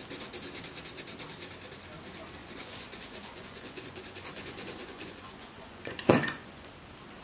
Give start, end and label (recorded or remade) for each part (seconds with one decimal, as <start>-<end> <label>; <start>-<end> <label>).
0.0-2.4 recorded; 2.4-6.7 remade; 6.7-7.2 recorded